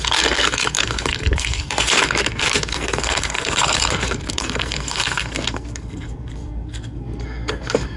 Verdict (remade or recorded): remade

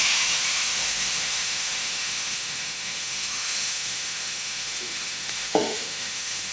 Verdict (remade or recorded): remade